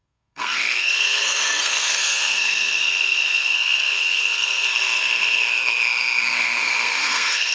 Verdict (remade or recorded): remade